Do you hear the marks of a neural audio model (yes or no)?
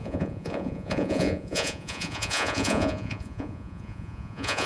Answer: yes